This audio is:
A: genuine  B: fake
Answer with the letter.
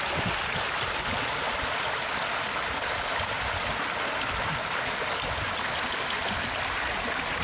A